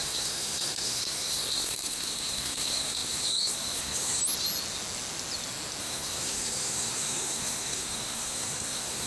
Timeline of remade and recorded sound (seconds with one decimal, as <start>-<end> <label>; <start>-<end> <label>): 0.0-4.2 remade; 4.2-5.8 recorded; 5.8-9.1 remade

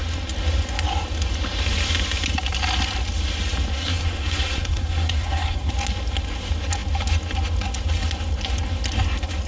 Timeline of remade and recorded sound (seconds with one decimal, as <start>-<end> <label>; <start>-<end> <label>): 0.0-3.7 recorded; 3.7-5.7 remade; 5.7-9.5 recorded

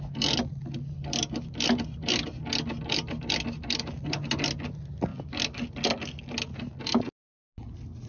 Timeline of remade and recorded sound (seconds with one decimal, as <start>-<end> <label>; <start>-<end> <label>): 0.0-8.1 recorded

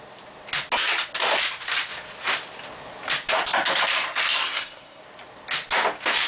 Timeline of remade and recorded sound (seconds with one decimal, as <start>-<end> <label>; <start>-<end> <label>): 0.0-4.4 recorded; 4.4-5.0 remade; 5.0-6.3 recorded

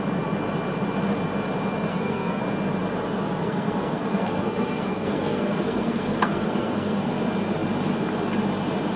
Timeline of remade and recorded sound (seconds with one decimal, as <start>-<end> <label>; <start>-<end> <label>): 0.0-1.9 recorded; 1.9-2.4 remade; 2.4-3.4 recorded; 3.4-7.1 remade; 7.1-9.0 recorded

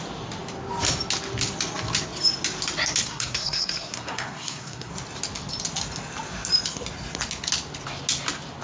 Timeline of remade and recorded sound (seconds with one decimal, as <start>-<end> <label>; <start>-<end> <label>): 0.0-3.0 recorded; 3.0-4.9 remade; 4.9-8.6 recorded

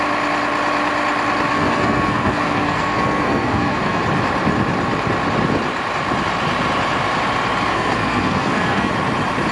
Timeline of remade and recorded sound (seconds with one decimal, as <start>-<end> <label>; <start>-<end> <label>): 0.0-1.5 recorded; 1.5-4.0 remade; 4.0-7.7 recorded; 7.7-8.9 remade; 8.9-9.5 recorded